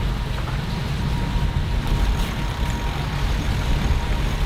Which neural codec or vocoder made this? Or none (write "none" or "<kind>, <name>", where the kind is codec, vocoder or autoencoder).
vocoder, BigVGAN v2